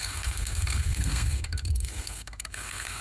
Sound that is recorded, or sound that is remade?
remade